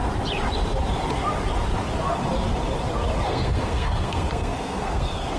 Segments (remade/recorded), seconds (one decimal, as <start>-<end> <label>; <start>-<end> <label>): 0.0-3.2 recorded; 3.2-5.4 remade